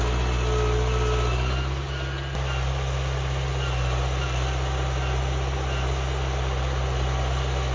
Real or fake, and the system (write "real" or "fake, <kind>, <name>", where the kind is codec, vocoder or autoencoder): real